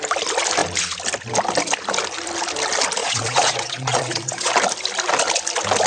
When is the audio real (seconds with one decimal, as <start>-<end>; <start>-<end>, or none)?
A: 0.0-3.0; 4.5-5.9